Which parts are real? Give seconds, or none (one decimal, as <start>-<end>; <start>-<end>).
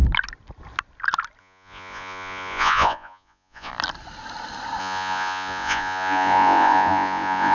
0.0-1.4; 3.7-4.8